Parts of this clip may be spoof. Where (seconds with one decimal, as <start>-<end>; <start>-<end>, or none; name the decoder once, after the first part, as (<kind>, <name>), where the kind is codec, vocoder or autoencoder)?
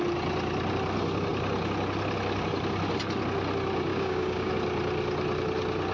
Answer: 3.9-4.5 (codec, DAC)